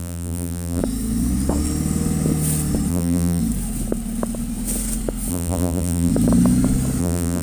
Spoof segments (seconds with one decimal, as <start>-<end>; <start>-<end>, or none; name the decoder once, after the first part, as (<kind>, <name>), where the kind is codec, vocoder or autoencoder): 0.0-0.8 (vocoder, BigVGAN v2); 2.9-3.4; 5.3-6.1; 7.0-7.4